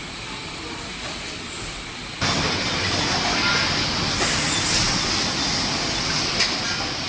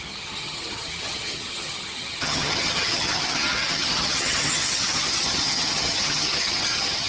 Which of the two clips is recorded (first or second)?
first